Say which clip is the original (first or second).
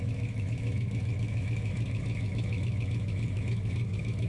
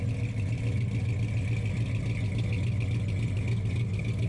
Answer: second